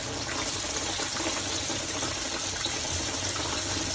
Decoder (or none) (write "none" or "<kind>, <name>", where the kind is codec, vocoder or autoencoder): none